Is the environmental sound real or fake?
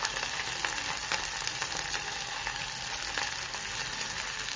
real